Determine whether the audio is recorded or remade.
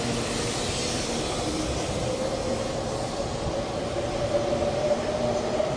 remade